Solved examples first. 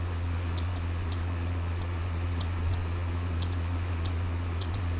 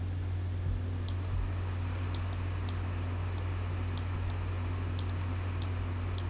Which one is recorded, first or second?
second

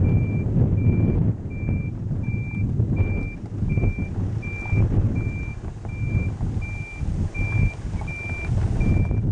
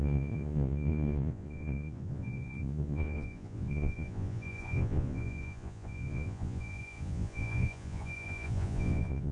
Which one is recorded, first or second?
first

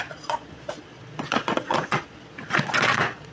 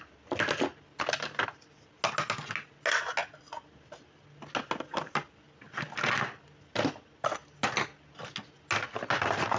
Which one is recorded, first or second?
second